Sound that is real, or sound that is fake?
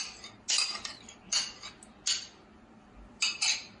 real